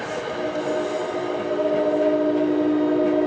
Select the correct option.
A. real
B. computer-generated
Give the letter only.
A